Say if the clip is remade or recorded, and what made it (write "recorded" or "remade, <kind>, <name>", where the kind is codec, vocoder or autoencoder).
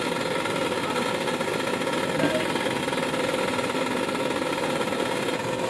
recorded